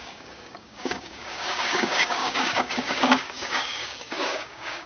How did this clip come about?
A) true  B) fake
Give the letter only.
B